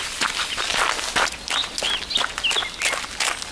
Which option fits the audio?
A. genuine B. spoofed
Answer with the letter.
A